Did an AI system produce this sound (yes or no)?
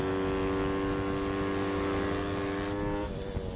no